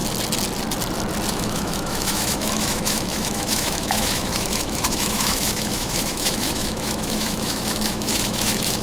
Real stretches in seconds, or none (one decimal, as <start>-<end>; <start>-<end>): 0.0-1.3